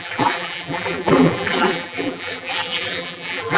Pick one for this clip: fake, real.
fake